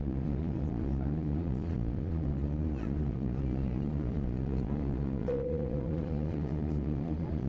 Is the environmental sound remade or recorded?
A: remade